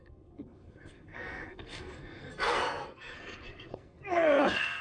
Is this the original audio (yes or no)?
no